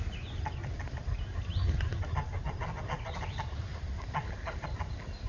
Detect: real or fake real